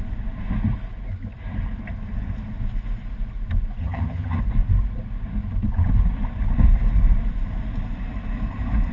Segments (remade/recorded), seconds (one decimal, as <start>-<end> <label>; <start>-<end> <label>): 0.0-3.8 recorded; 3.8-4.4 remade; 4.4-8.9 recorded